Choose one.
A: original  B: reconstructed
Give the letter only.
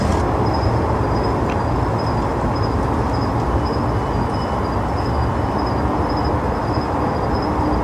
A